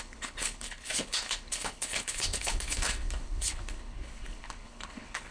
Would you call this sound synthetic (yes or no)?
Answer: yes